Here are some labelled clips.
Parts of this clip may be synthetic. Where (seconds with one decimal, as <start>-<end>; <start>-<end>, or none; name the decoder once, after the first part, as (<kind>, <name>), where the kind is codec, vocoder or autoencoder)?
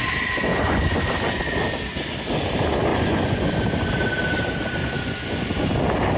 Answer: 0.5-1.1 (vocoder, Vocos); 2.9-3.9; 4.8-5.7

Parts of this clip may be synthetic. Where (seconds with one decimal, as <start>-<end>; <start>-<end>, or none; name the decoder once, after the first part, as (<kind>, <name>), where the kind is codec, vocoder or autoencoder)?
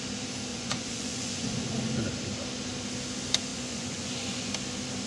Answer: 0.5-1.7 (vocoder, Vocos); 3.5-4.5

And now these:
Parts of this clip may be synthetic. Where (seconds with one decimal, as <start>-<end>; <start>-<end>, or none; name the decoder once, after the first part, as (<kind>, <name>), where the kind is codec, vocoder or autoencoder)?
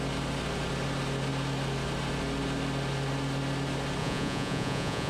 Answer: 4.0-5.1 (vocoder, Vocos)